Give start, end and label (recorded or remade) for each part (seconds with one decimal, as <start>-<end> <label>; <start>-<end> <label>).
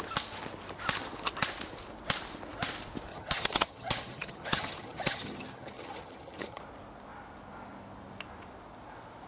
0.0-3.1 recorded; 3.1-6.6 remade; 6.6-9.3 recorded